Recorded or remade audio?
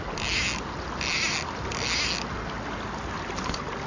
recorded